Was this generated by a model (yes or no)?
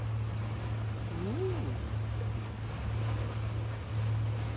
no